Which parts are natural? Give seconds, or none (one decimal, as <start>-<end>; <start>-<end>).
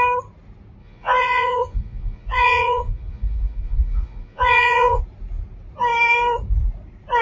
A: 0.0-0.8; 5.0-7.2